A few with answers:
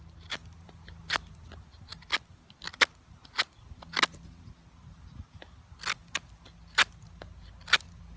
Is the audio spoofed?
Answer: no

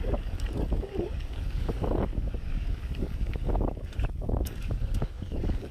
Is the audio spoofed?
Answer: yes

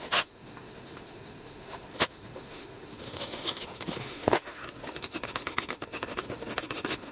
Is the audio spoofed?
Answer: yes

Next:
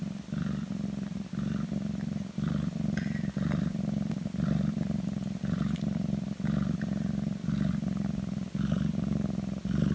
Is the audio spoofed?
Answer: no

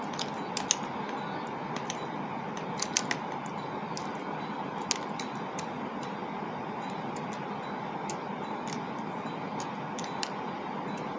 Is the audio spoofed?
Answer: no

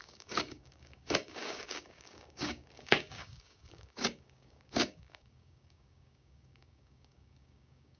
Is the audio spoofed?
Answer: yes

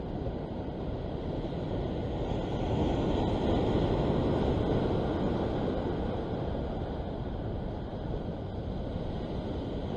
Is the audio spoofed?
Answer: no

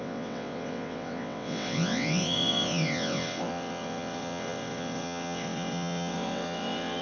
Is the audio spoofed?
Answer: yes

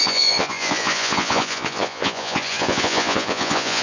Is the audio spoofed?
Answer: yes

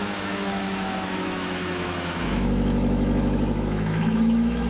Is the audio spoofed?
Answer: yes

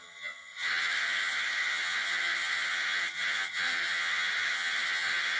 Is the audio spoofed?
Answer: yes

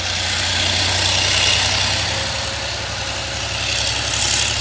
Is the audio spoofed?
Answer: no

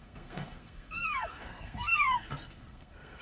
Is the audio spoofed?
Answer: yes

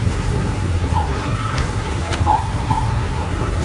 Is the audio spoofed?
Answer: yes